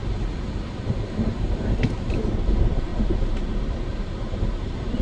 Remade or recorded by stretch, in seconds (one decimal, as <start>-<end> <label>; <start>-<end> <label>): 0.0-0.9 recorded; 0.9-5.0 remade